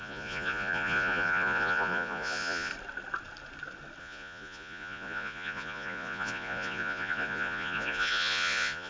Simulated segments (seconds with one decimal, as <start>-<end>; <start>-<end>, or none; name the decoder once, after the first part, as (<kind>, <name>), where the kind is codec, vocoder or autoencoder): 0.0-2.7 (vocoder, Vocos); 4.0-8.9